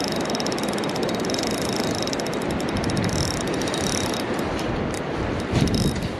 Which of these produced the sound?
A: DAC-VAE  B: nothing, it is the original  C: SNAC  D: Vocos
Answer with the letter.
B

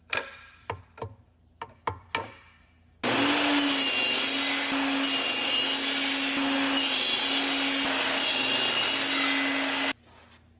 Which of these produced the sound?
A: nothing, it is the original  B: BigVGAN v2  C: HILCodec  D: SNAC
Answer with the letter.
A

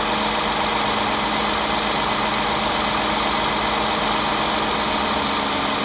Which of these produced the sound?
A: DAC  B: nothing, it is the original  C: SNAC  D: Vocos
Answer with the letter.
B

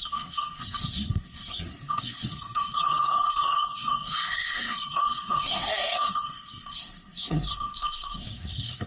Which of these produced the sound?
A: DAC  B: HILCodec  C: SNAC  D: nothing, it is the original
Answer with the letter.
C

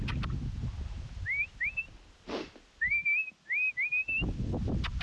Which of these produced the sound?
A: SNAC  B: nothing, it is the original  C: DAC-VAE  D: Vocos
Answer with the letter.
B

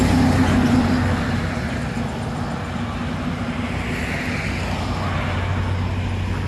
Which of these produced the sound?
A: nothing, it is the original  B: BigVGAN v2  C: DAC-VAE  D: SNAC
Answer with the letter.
A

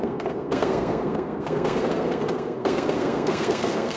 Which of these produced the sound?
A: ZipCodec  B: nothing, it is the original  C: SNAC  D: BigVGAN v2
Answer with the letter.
C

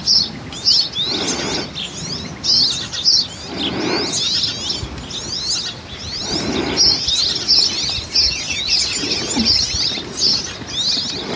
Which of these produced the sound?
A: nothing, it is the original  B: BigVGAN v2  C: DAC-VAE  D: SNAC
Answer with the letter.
A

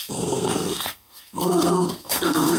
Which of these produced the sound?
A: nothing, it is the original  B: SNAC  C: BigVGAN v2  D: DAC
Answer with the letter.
B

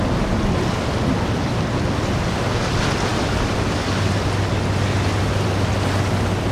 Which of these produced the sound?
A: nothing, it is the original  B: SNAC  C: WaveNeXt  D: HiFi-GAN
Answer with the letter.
A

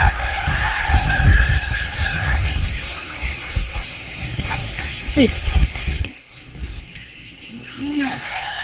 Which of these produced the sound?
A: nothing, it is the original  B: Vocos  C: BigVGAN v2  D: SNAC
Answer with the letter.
D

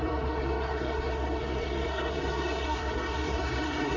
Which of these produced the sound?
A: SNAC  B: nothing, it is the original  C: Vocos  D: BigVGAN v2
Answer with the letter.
A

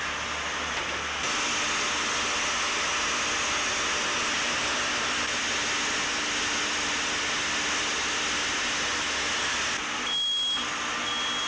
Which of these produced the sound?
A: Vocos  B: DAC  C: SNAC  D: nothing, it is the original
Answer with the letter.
D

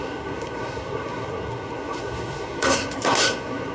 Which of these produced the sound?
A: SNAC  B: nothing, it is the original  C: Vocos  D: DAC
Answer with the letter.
A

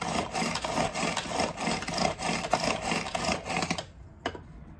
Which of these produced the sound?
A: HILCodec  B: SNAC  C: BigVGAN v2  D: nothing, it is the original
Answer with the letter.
D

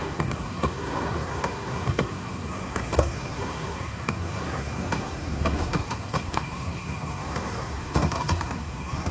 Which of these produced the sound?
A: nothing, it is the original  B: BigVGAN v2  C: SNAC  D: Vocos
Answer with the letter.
C